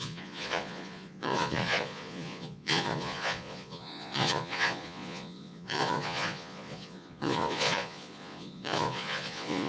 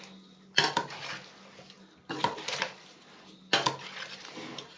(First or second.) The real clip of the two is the second